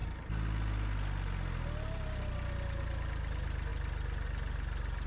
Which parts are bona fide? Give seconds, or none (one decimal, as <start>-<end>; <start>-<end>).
0.0-5.1